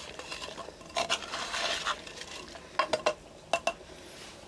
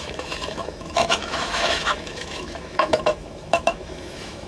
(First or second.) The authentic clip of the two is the first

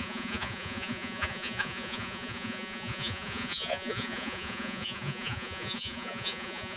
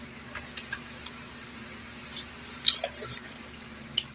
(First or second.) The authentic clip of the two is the second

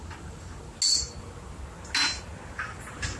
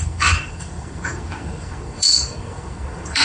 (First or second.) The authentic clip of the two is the first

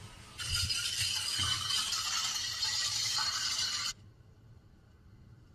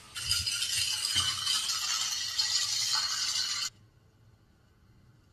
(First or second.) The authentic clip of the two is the second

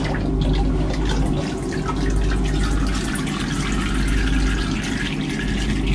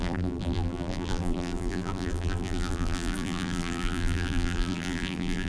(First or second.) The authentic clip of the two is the first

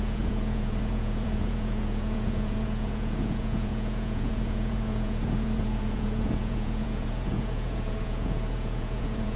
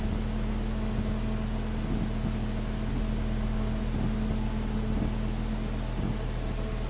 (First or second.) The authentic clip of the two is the second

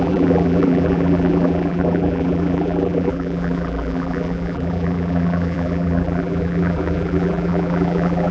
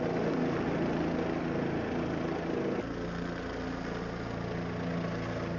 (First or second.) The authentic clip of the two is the second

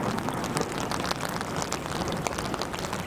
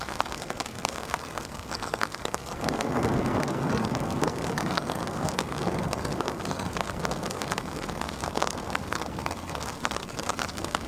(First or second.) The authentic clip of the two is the first